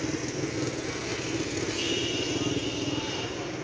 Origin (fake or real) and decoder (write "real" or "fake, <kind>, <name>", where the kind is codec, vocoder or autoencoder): real